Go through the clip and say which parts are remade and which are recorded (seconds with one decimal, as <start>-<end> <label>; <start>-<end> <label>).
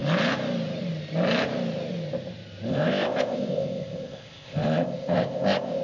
0.0-2.7 recorded; 2.7-5.8 remade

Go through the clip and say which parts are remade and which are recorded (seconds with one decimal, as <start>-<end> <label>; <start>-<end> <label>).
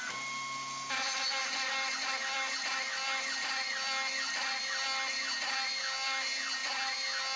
0.0-7.4 recorded